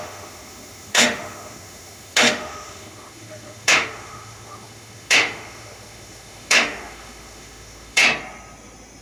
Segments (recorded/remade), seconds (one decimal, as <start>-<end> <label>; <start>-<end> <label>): 0.0-8.0 remade; 8.0-9.0 recorded